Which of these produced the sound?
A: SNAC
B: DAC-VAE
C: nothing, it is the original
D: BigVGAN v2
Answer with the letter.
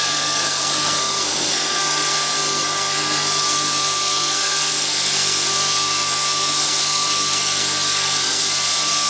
A